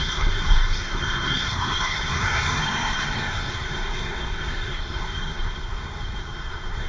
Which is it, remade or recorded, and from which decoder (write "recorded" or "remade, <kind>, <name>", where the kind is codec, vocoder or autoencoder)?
remade, codec, SNAC